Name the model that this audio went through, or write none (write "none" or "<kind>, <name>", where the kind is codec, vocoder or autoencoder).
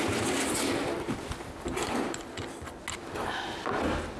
none